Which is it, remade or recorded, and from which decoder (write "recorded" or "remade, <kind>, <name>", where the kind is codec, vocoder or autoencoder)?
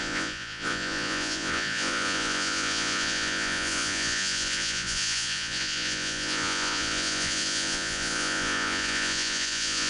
remade, vocoder, Vocos